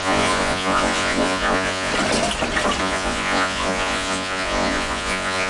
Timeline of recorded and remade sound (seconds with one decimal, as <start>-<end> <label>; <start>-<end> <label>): 0.0-1.9 remade; 1.9-2.8 recorded; 2.8-5.5 remade